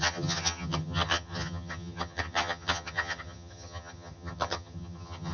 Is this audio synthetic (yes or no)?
yes